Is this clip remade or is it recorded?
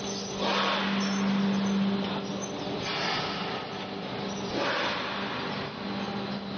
recorded